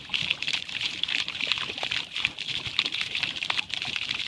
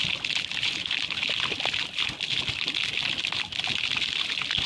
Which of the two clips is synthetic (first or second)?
first